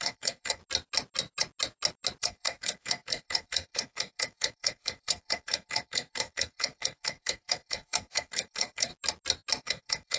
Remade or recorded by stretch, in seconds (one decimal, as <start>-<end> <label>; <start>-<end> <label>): 0.0-0.6 remade; 0.6-2.2 recorded; 2.2-8.9 remade; 8.9-9.6 recorded; 9.6-10.2 remade